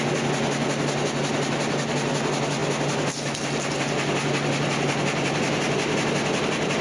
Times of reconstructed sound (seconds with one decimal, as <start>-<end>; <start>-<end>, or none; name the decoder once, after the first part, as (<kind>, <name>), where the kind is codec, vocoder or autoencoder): none